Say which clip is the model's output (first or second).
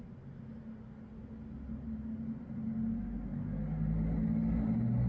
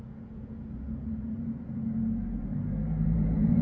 second